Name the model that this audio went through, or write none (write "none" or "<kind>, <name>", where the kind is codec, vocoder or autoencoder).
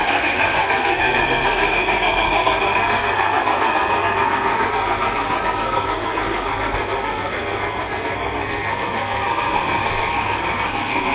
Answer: codec, SNAC